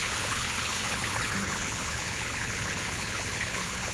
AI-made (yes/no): yes